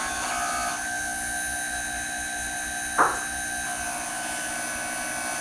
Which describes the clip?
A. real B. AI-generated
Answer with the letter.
A